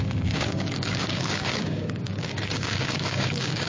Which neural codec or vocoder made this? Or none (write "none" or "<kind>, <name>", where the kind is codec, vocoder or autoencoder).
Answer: codec, DAC